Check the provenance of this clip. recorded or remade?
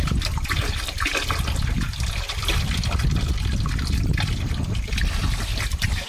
recorded